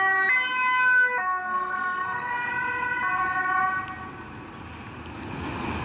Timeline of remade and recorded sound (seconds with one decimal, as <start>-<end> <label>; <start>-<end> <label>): 0.0-1.2 recorded; 1.2-2.5 remade; 2.5-5.8 recorded